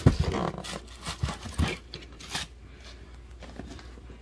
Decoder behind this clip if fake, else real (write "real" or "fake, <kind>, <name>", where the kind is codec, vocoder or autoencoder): real